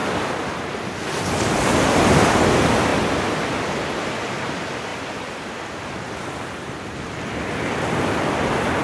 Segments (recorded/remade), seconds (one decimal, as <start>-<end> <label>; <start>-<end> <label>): 0.0-8.8 recorded